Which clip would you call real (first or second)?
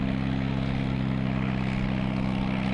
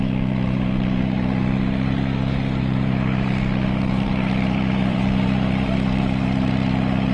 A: first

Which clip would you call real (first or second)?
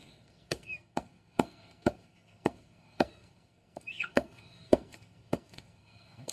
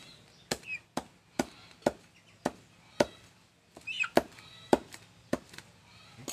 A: second